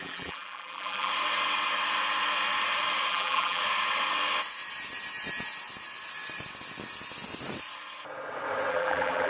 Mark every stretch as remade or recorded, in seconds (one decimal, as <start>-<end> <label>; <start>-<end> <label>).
0.0-1.1 remade; 1.1-3.1 recorded; 3.1-3.6 remade; 3.6-8.7 recorded; 8.7-9.3 remade